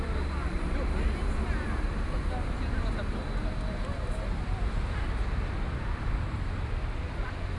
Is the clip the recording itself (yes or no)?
yes